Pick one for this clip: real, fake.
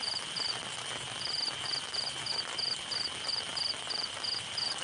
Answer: real